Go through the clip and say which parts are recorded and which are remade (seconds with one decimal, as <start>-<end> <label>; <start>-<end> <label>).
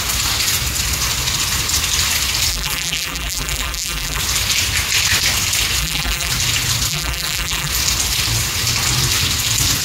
0.0-2.5 recorded; 2.5-4.2 remade; 4.2-5.8 recorded; 5.8-6.3 remade; 6.3-6.9 recorded; 6.9-7.7 remade; 7.7-9.8 recorded